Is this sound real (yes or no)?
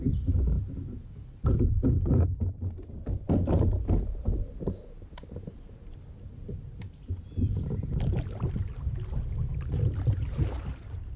yes